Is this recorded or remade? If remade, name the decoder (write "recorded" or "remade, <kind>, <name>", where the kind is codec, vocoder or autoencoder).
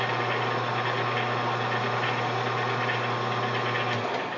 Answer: recorded